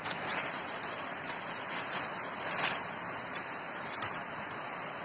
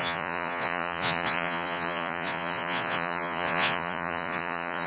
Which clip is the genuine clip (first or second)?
first